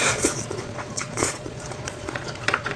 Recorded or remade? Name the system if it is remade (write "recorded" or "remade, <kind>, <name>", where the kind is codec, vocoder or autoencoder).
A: remade, vocoder, Vocos